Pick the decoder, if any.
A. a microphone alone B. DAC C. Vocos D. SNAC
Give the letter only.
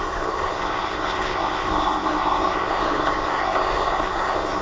D